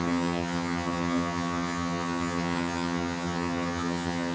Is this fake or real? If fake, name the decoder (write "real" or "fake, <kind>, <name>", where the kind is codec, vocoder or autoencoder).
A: fake, vocoder, HiFi-GAN